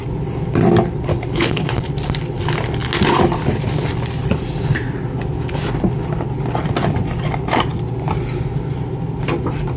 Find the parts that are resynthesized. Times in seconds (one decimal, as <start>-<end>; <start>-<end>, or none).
1.1-1.9